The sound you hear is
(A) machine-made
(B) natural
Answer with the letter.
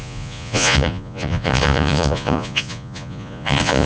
A